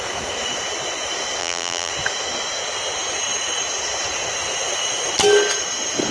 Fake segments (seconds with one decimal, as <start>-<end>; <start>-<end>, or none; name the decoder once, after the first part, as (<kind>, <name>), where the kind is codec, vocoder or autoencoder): 1.4-1.9 (vocoder, BigVGAN v2)